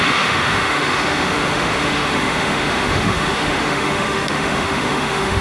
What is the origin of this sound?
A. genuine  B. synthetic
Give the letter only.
B